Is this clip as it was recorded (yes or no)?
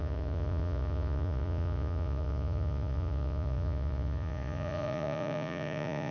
no